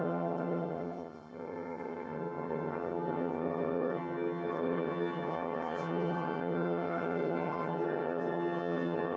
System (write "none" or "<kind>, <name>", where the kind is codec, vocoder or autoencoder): vocoder, HiFi-GAN